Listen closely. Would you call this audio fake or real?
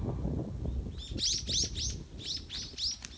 real